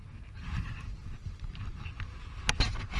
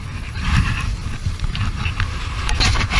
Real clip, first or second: first